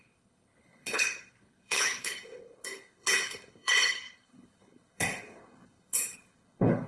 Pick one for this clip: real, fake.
fake